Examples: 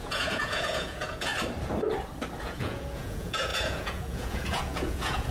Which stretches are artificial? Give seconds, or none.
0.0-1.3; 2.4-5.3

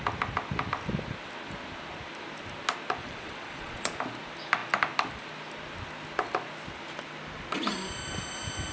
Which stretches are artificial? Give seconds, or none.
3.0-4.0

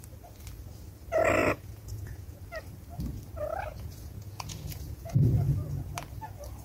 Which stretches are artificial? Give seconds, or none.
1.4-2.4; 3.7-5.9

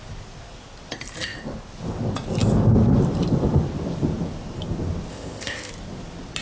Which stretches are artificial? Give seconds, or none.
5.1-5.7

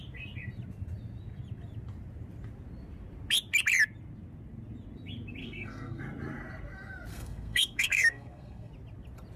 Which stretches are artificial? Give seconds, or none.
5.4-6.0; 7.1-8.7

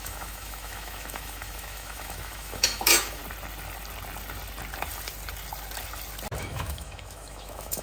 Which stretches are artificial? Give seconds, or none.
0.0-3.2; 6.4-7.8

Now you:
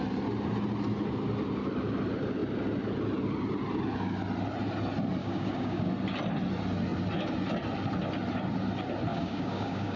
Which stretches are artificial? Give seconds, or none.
5.2-5.9; 9.1-10.0